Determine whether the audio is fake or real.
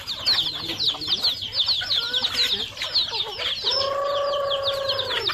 real